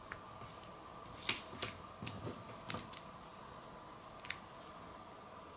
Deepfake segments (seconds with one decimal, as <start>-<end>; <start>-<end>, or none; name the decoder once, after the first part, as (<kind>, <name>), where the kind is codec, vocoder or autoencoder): 1.6-2.2 (codec, DAC)